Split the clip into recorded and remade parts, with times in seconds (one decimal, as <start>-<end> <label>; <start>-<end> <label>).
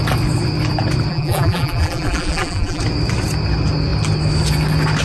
0.0-1.1 recorded; 1.1-2.8 remade; 2.8-5.0 recorded